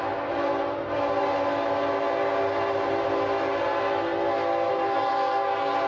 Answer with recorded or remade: recorded